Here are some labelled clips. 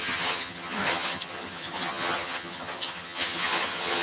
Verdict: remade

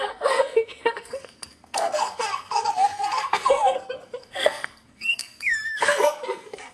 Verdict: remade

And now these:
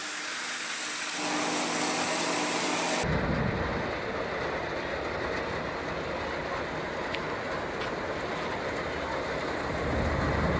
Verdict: recorded